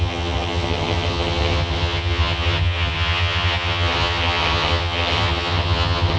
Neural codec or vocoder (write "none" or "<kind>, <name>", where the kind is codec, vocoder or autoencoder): vocoder, HiFi-GAN